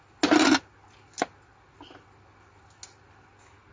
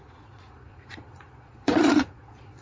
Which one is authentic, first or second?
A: first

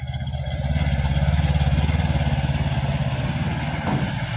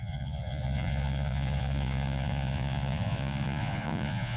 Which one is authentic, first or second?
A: first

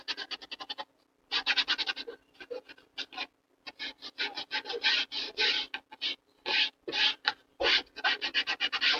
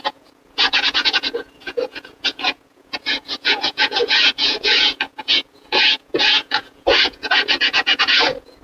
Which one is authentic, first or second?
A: first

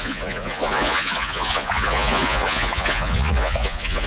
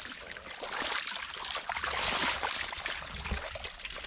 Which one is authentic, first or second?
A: second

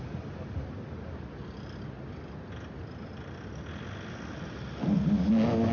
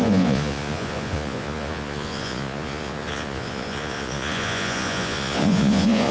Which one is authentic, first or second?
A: first